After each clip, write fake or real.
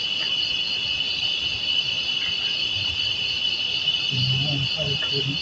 real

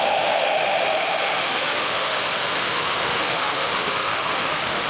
fake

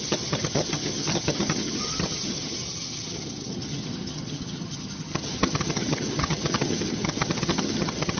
fake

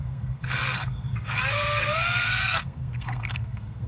fake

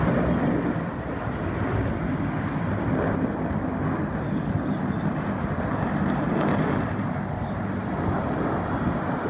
fake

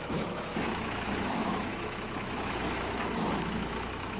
fake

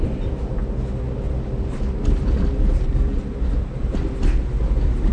real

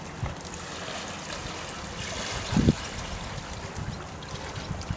real